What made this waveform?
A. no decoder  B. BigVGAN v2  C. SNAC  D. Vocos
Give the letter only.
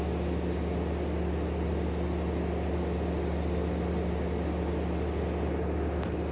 A